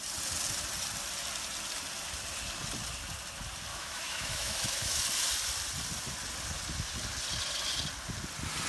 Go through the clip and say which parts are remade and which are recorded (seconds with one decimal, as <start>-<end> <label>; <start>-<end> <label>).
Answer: 0.0-3.7 recorded; 3.7-5.0 remade; 5.0-8.7 recorded